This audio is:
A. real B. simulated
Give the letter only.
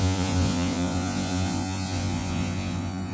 B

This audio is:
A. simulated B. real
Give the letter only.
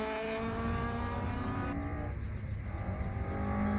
B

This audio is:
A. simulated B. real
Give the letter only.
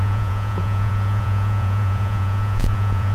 A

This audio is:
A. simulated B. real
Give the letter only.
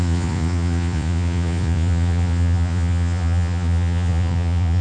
A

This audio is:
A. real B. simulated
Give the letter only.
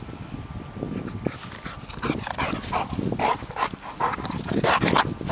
A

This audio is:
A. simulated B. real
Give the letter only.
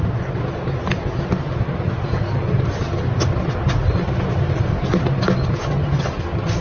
B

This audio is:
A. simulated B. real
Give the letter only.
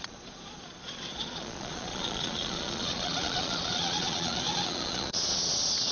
A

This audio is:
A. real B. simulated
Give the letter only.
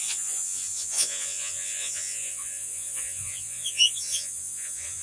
B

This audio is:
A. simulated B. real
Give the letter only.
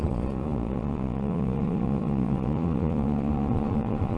A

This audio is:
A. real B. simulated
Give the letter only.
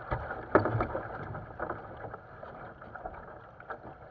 A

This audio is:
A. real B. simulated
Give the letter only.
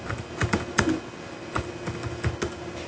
A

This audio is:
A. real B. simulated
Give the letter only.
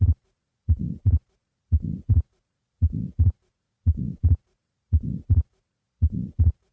B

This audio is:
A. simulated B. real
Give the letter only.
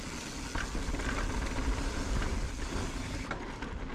B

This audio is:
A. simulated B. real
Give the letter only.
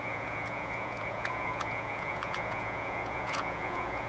A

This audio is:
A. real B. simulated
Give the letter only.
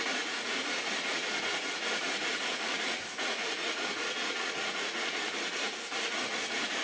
B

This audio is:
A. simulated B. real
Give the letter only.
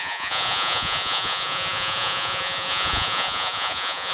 A